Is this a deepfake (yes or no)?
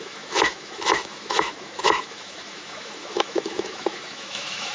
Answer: yes